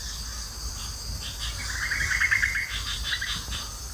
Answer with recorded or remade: recorded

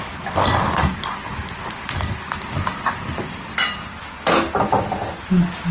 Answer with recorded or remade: recorded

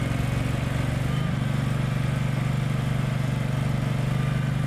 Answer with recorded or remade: recorded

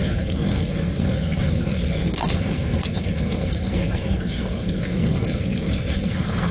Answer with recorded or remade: remade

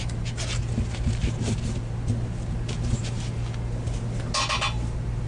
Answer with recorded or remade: recorded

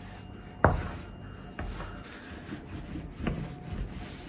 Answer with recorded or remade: recorded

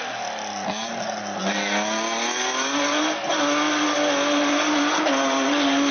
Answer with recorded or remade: recorded